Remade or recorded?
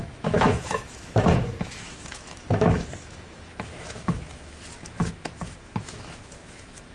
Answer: remade